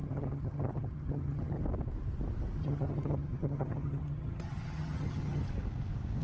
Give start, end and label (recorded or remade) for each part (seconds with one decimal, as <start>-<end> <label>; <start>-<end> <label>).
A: 0.0-1.6 remade; 1.6-2.6 recorded; 2.6-5.4 remade; 5.4-6.2 recorded